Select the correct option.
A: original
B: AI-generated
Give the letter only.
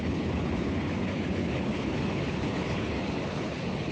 B